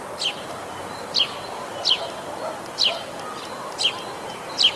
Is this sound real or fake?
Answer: real